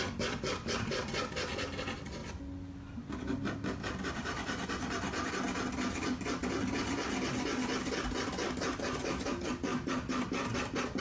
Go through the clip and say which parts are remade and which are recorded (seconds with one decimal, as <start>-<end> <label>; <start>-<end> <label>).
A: 0.0-11.0 recorded